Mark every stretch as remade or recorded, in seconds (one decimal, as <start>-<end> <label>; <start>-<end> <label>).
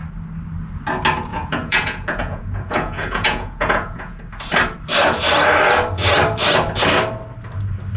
0.0-1.3 recorded; 1.3-4.2 remade; 4.2-8.0 recorded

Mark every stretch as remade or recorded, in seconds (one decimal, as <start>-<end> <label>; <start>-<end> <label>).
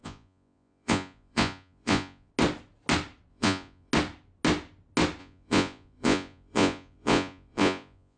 0.0-2.3 remade; 2.3-3.3 recorded; 3.3-3.9 remade; 3.9-5.2 recorded; 5.2-8.2 remade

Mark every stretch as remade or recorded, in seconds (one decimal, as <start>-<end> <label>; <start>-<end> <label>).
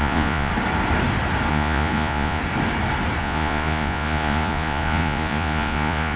0.0-0.5 remade; 0.5-1.5 recorded; 1.5-2.4 remade; 2.4-3.2 recorded; 3.2-6.2 remade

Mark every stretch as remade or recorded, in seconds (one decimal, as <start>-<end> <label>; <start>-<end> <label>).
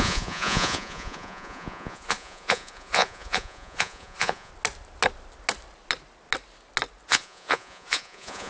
0.0-4.5 remade; 4.5-7.1 recorded; 7.1-8.5 remade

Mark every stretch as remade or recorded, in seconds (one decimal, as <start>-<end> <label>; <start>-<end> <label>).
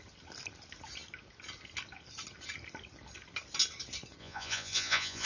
0.0-4.2 recorded; 4.2-5.3 remade